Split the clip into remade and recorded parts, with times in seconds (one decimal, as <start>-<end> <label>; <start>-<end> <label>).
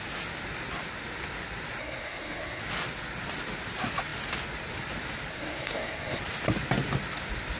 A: 0.0-1.8 recorded; 1.8-2.6 remade; 2.6-5.3 recorded; 5.3-6.2 remade; 6.2-7.6 recorded